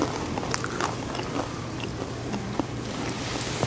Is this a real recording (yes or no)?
no